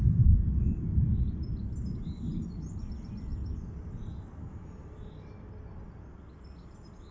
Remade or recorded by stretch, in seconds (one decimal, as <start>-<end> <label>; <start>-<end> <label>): 0.0-7.1 recorded